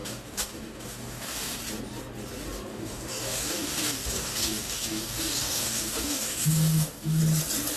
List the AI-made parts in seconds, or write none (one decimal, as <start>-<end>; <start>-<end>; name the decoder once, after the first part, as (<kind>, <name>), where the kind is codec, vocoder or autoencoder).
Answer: 0.0-1.6 (codec, DAC); 2.7-7.2